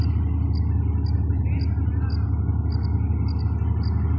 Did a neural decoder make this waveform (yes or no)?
no